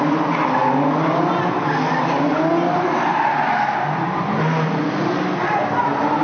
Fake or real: real